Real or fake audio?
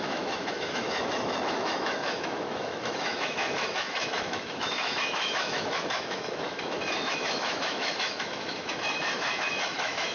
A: fake